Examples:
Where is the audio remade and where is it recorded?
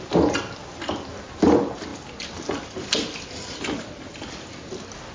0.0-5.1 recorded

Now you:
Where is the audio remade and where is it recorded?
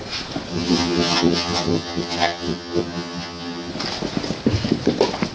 0.0-0.5 recorded; 0.5-3.7 remade; 3.7-5.3 recorded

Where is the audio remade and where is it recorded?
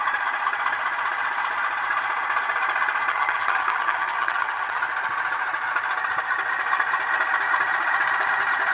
0.0-3.1 recorded; 3.1-4.8 remade; 4.8-8.7 recorded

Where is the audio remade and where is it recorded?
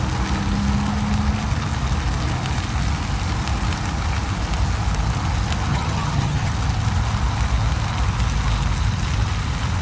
0.0-5.7 recorded; 5.7-6.5 remade; 6.5-9.8 recorded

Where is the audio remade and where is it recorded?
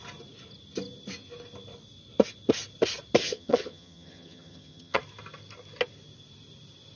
0.0-3.2 recorded; 3.2-5.0 remade; 5.0-7.0 recorded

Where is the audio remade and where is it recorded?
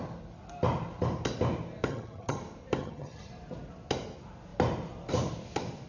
0.0-1.9 recorded; 1.9-2.4 remade; 2.4-2.8 recorded; 2.8-3.3 remade; 3.3-5.9 recorded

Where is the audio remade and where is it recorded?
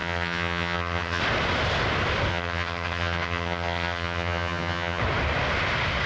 0.0-1.2 remade; 1.2-2.3 recorded; 2.3-5.0 remade; 5.0-6.1 recorded